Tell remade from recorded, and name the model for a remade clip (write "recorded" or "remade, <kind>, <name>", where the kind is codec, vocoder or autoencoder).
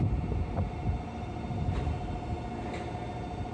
recorded